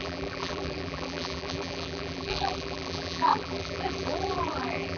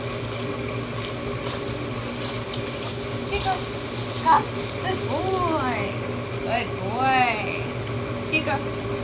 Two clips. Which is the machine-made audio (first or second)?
first